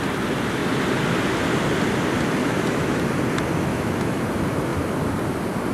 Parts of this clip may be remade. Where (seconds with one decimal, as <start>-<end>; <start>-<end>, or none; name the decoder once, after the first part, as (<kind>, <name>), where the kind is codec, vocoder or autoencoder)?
2.4-3.0 (autoencoder, DAC-VAE); 3.7-4.2

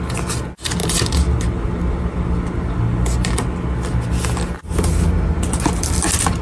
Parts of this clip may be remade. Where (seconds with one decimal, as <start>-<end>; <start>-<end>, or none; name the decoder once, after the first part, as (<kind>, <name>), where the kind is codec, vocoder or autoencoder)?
none

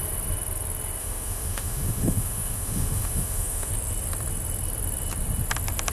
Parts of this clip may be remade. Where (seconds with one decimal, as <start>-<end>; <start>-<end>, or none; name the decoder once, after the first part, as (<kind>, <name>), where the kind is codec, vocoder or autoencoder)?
1.0-3.7 (autoencoder, DAC-VAE)

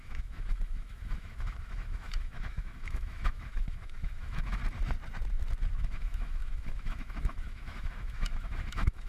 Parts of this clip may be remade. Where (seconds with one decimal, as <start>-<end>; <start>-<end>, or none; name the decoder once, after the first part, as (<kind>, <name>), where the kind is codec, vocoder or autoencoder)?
0.0-4.6 (autoencoder, DAC-VAE); 5.7-9.1

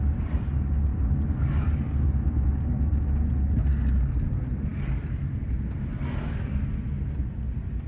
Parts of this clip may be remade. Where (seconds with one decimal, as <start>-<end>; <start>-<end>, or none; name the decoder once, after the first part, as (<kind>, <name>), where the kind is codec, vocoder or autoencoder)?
none

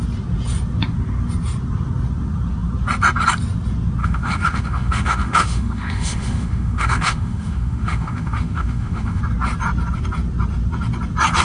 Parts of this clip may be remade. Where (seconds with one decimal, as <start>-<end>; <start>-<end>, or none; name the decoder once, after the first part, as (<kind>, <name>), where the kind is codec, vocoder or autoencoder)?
4.0-9.2 (autoencoder, DAC-VAE)